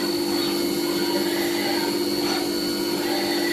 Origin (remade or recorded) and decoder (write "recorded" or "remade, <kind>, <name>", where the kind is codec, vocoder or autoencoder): recorded